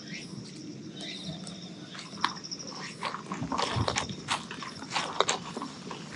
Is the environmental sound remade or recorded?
recorded